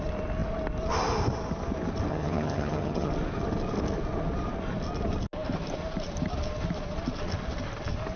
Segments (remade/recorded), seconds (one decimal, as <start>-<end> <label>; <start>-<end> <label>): 0.0-2.1 recorded; 2.1-3.1 remade; 3.1-8.2 recorded